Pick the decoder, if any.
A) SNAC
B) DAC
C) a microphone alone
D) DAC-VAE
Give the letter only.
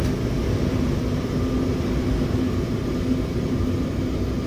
C